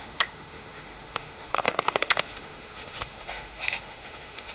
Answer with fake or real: fake